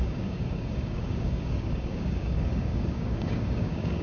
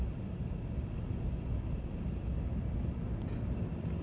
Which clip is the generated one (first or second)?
first